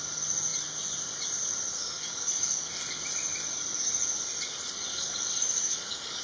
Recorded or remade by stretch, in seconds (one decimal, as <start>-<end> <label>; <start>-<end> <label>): 0.0-1.8 recorded; 1.8-2.7 remade; 2.7-4.9 recorded; 4.9-6.2 remade

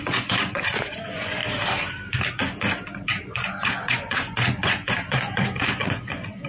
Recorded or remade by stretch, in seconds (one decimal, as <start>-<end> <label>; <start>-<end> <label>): 0.0-1.4 remade; 1.4-2.3 recorded; 2.3-6.5 remade

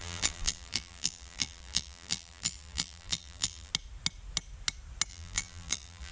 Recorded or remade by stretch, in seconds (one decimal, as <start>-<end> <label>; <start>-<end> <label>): 0.0-3.7 remade; 3.7-5.1 recorded; 5.1-6.1 remade

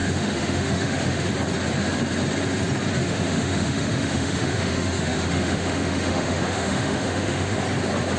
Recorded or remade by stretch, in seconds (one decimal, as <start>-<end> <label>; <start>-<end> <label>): 0.0-1.3 remade; 1.3-3.0 recorded; 3.0-7.6 remade; 7.6-8.2 recorded

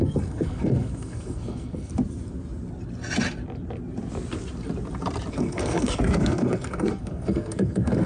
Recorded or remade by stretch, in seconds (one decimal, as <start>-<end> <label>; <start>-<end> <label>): 0.0-1.9 remade; 1.9-5.3 recorded; 5.3-8.1 remade

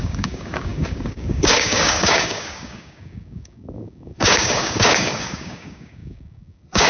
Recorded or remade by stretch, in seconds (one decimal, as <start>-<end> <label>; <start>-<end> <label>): 0.0-6.9 remade